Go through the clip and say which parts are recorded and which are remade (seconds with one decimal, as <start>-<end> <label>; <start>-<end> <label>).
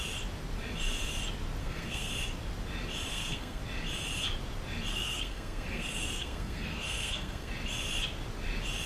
0.0-1.6 recorded; 1.6-2.1 remade; 2.1-3.1 recorded; 3.1-3.6 remade; 3.6-4.9 recorded; 4.9-7.5 remade; 7.5-8.9 recorded